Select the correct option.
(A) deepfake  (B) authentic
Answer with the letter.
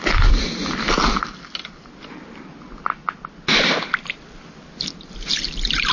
B